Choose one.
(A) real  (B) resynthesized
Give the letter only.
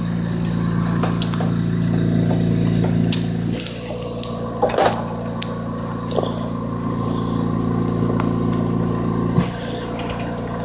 A